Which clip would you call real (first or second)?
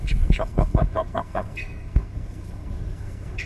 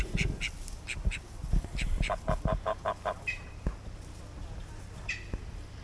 second